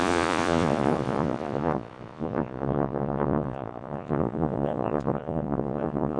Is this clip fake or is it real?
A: fake